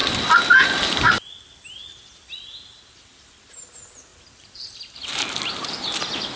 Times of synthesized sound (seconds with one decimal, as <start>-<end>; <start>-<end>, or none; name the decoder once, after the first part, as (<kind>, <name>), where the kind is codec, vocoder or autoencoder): 4.1-6.4 (vocoder, BigVGAN v2)